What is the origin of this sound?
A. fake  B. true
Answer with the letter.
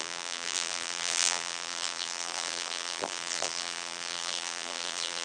A